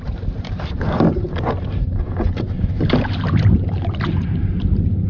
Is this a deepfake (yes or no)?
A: yes